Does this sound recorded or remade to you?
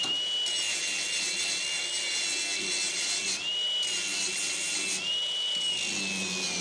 recorded